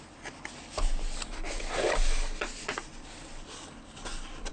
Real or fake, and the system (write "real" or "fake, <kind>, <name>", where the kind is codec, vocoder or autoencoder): real